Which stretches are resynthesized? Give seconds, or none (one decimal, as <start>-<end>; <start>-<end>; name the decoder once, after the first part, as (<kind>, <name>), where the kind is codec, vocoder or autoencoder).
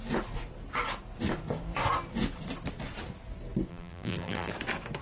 3.7-4.5 (vocoder, BigVGAN v2)